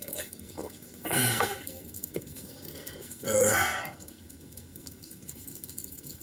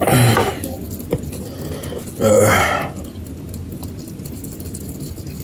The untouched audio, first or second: second